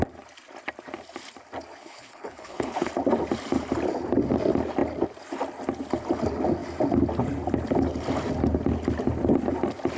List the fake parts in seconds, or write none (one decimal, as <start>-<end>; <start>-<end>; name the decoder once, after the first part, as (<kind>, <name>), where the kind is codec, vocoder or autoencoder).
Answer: 1.8-2.9 (codec, HILCodec)